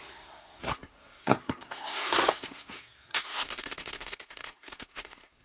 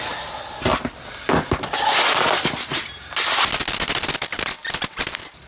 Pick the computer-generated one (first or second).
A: first